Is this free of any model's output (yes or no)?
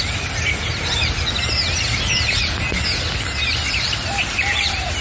yes